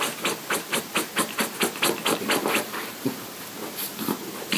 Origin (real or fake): real